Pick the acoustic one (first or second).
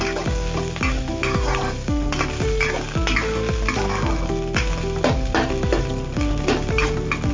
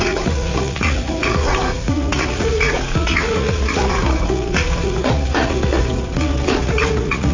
first